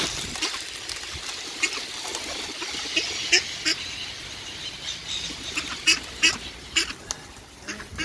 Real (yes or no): yes